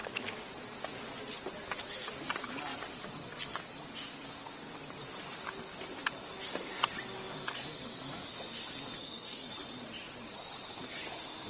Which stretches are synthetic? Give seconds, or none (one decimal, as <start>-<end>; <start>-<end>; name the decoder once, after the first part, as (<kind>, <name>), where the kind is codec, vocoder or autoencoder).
9.0-9.5 (codec, SNAC)